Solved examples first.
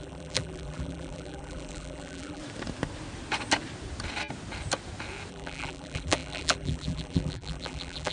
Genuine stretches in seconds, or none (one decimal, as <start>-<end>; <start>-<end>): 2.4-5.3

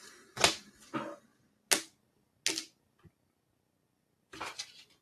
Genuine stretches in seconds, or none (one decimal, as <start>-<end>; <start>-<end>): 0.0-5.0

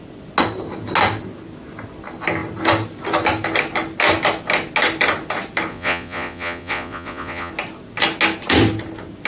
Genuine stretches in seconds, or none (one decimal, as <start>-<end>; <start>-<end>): 0.0-5.7; 7.5-9.3

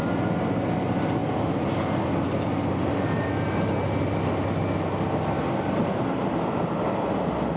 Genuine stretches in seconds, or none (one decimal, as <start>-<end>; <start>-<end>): 0.0-7.6

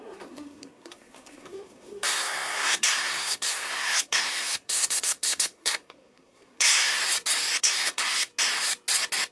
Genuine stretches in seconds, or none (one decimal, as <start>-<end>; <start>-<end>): 7.0-7.6; 8.3-9.3

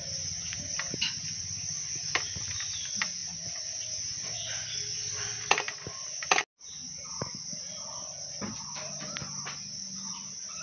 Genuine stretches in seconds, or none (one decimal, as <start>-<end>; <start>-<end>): 0.0-10.6

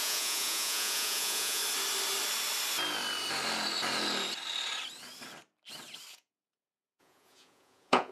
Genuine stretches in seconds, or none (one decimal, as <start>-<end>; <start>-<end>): 1.6-6.1